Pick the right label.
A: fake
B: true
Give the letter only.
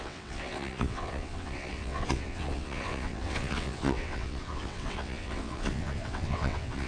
A